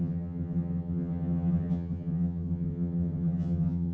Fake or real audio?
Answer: fake